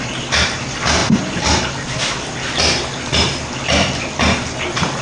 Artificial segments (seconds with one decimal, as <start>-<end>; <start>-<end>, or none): none